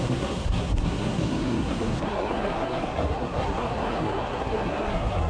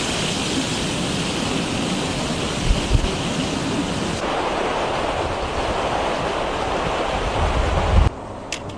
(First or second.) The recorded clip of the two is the second